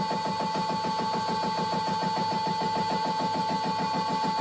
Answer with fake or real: real